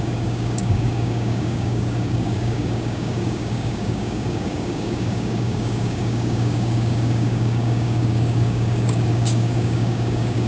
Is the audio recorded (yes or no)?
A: no